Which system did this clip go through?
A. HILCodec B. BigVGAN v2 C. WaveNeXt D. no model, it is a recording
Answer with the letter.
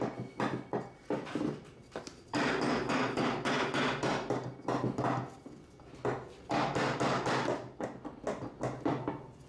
D